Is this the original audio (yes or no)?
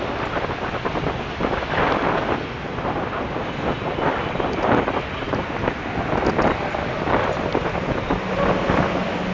yes